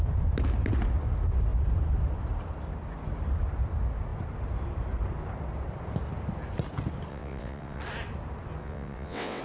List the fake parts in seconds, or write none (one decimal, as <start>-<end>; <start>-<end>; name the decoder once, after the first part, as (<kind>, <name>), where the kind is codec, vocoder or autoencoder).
7.1-7.8 (vocoder, WaveNeXt); 8.6-9.4